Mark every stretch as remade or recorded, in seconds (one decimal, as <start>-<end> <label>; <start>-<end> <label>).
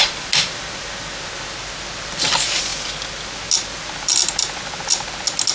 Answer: 0.0-5.5 recorded